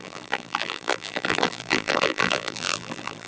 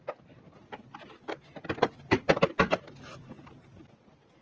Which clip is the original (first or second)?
second